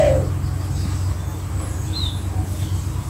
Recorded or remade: recorded